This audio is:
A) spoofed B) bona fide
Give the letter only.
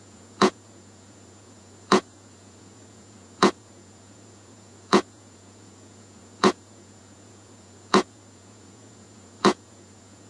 A